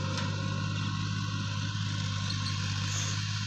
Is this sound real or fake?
real